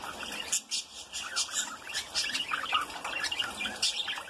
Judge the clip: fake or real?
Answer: real